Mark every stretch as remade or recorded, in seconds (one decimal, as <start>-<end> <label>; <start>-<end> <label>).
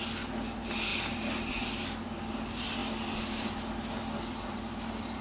0.0-5.2 recorded